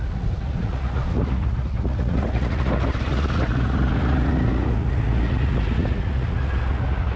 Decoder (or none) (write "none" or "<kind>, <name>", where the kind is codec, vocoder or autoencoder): vocoder, Vocos